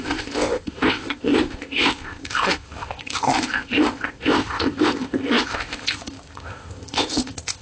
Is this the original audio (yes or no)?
no